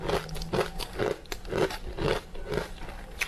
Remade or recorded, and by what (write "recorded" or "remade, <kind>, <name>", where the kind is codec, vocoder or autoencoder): recorded